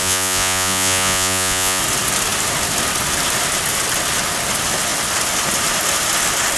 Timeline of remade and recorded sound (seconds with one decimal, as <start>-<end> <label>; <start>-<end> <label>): 0.0-1.8 remade; 1.8-6.6 recorded